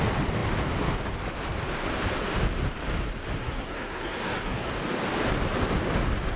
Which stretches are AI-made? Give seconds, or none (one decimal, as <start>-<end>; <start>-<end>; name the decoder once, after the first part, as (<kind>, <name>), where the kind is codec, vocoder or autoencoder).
3.4-4.7 (codec, SNAC)